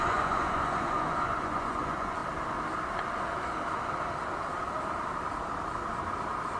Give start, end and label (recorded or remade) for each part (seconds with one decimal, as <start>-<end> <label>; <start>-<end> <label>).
0.0-2.2 remade; 2.2-6.6 recorded